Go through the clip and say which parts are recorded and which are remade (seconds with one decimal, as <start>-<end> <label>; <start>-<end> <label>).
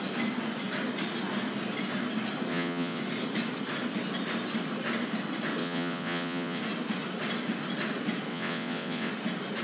0.0-2.5 recorded; 2.5-3.0 remade; 3.0-5.6 recorded; 5.6-6.6 remade; 6.6-8.3 recorded; 8.3-9.1 remade; 9.1-9.6 recorded